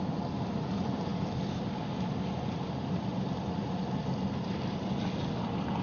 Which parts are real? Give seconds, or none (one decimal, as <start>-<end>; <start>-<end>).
0.0-1.1; 4.6-5.8